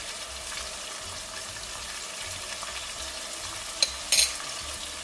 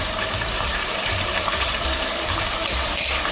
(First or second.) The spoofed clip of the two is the second